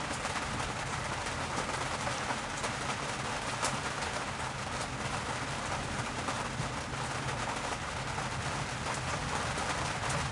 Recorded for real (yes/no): yes